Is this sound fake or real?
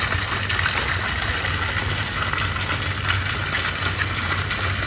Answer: real